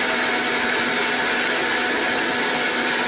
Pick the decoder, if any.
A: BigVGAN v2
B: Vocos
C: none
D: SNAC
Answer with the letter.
C